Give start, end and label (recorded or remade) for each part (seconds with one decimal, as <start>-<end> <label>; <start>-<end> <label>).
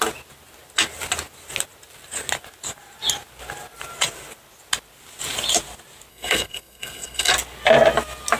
0.0-6.1 recorded; 6.1-7.3 remade; 7.3-8.4 recorded